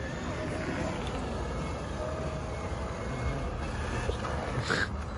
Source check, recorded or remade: recorded